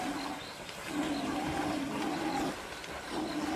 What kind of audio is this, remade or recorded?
recorded